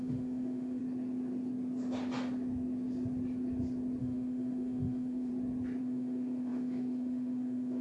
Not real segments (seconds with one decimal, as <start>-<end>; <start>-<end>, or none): 0.0-0.8; 4.0-5.3; 5.8-7.8